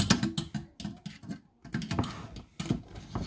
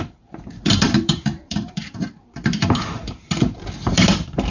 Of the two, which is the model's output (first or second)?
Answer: second